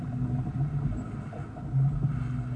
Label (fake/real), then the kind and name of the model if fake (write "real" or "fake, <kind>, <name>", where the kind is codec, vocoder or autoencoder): real